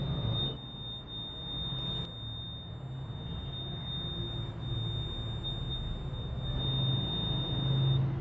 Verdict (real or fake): real